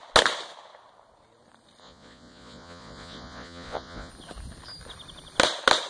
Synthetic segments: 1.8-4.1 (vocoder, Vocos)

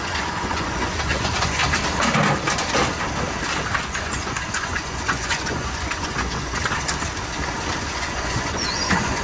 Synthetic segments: 0.0-1.6 (vocoder, Vocos); 3.7-6.6; 7.8-9.2

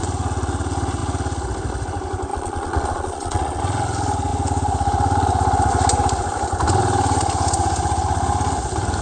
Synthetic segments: 2.3-3.6 (vocoder, Vocos)

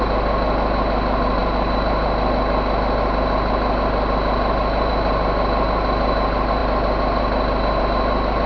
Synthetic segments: none

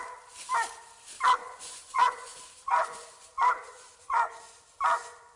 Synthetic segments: 1.4-4.4 (vocoder, Vocos)